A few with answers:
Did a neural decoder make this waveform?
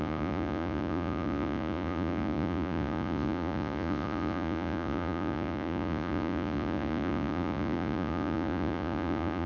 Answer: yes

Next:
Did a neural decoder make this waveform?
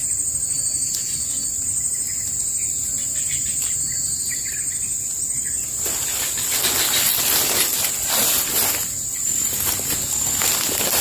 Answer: no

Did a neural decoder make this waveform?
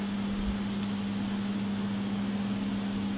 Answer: no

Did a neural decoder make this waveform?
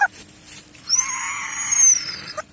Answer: no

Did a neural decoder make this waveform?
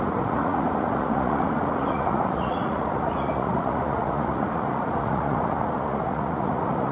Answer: yes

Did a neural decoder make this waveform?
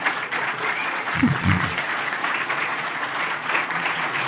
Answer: yes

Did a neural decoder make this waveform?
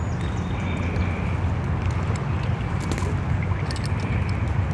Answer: no